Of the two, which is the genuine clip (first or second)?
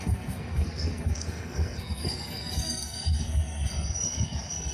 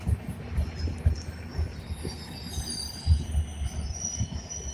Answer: second